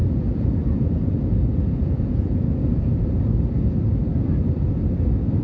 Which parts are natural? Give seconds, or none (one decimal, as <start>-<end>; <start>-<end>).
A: 3.2-5.4